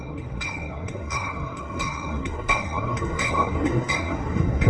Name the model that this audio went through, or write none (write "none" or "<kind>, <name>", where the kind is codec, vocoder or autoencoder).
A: codec, SNAC